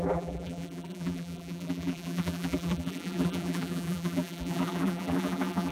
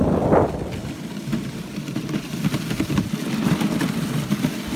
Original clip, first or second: second